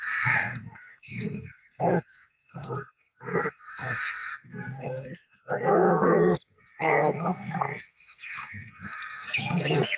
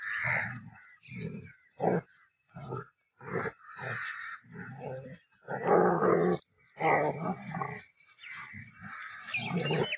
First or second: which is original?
second